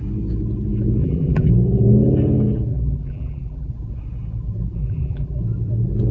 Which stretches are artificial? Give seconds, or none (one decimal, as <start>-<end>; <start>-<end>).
1.0-1.5; 2.7-3.7; 4.8-5.4

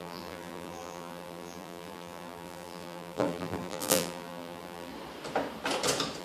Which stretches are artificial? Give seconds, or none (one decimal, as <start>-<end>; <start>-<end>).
0.0-4.9

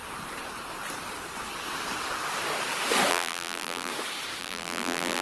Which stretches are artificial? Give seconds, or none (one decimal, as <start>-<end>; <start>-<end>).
3.1-3.9; 4.4-5.2